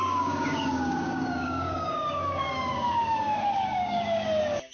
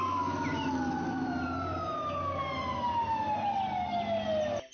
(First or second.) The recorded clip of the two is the second